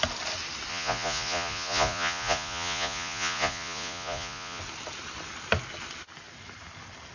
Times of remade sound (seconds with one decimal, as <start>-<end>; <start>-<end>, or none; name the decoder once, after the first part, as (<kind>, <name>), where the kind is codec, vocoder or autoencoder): 0.7-4.6 (vocoder, Vocos)